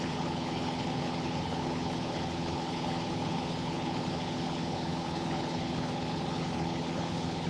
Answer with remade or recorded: remade